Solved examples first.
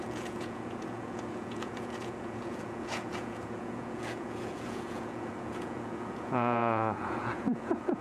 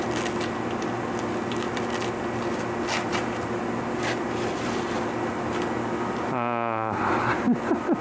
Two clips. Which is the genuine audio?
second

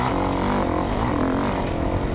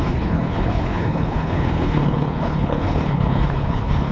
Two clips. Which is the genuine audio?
first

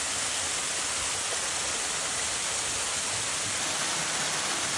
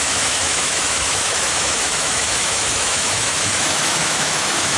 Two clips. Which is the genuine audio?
first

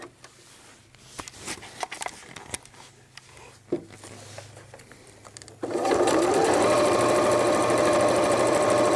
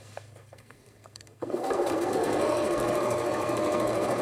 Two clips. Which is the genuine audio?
first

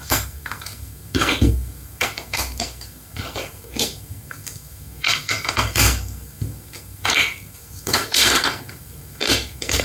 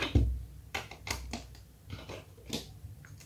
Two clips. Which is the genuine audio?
second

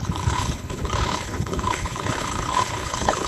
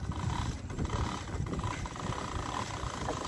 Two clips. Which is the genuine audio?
second